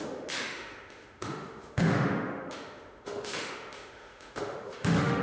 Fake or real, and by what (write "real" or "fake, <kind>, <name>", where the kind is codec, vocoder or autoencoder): fake, autoencoder, DAC-VAE